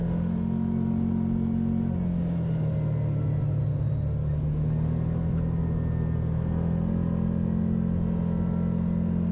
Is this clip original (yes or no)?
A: yes